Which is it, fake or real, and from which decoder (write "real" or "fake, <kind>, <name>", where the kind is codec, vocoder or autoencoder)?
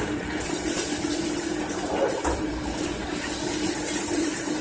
fake, vocoder, BigVGAN v2